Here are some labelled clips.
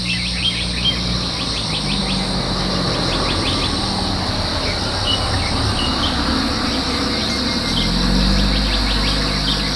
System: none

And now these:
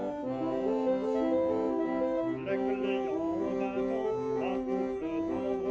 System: none